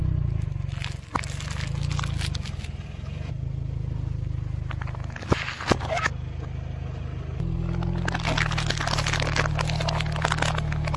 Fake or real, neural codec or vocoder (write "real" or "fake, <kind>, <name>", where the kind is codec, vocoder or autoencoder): real